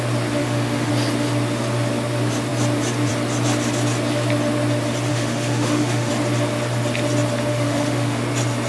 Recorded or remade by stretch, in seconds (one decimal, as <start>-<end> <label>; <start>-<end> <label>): 0.0-0.4 recorded; 0.4-0.9 remade; 0.9-5.1 recorded; 5.1-6.1 remade; 6.1-7.5 recorded; 7.5-8.2 remade; 8.2-8.7 recorded